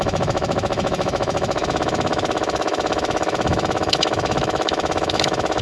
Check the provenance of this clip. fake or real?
fake